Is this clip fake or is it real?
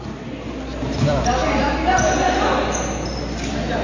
real